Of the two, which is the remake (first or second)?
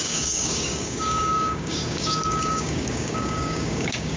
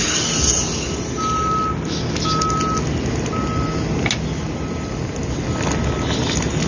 first